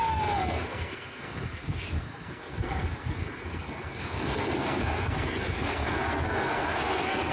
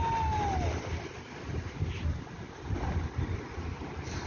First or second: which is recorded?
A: second